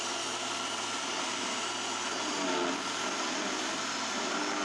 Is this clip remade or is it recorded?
recorded